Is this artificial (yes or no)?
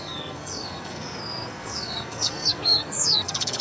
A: yes